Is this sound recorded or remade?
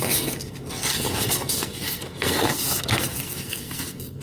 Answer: remade